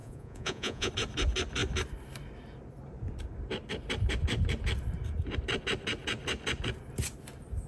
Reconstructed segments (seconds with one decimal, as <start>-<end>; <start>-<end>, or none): 0.0-0.9